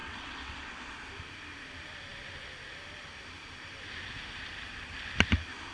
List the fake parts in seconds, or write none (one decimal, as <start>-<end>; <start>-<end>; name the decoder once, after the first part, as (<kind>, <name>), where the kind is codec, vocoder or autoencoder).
0.0-0.9 (vocoder, WaveNeXt)